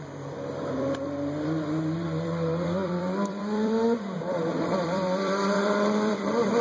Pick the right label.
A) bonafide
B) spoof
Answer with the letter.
B